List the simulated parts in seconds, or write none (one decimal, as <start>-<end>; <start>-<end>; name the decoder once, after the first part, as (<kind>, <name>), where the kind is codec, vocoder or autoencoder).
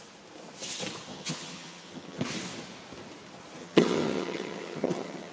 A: 1.1-2.2 (vocoder, HiFi-GAN); 3.6-5.3